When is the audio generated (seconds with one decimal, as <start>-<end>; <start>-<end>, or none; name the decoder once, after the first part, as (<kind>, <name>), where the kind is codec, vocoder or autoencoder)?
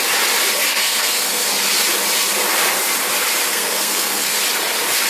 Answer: 0.7-1.4 (codec, SNAC); 3.5-4.4